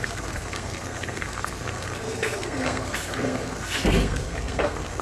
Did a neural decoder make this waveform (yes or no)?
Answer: yes